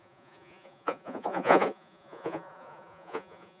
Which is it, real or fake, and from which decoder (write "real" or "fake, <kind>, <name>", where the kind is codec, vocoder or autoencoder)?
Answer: fake, vocoder, Vocos